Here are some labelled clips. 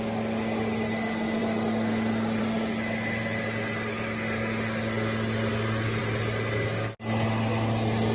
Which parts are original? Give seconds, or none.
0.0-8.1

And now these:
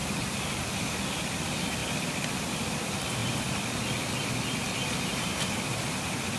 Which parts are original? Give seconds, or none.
0.0-0.8; 3.2-5.4